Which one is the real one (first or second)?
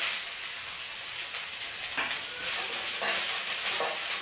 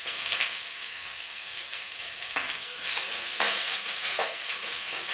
first